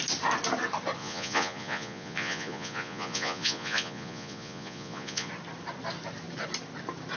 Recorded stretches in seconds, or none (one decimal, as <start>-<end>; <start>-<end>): 0.0-1.0; 5.3-7.2